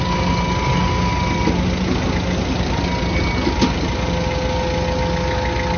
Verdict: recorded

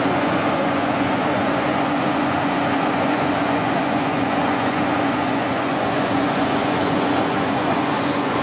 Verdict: remade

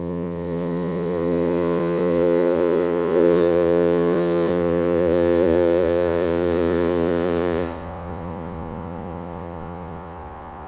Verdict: remade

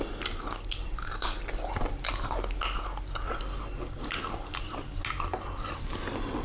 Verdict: recorded